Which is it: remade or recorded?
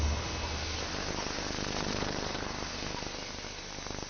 recorded